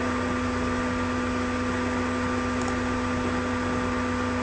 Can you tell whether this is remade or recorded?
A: recorded